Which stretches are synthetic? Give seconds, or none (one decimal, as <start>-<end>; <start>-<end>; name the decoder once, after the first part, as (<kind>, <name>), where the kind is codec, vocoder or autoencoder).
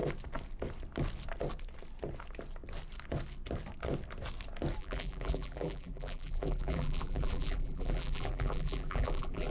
4.8-9.5 (vocoder, BigVGAN v2)